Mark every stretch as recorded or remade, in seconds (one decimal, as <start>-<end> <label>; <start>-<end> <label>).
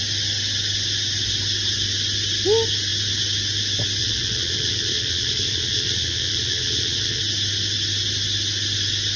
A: 0.0-4.0 recorded; 4.0-7.2 remade; 7.2-9.2 recorded